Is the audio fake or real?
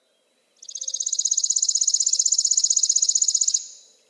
real